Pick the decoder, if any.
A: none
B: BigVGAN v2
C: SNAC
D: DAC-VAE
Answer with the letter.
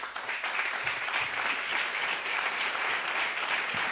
B